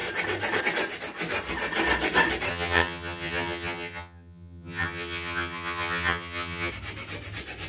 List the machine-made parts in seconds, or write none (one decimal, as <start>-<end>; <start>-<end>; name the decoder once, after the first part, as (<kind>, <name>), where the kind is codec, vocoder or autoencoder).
2.5-6.7 (vocoder, HiFi-GAN)